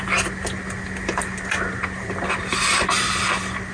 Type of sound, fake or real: real